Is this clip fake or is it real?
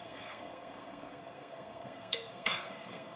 fake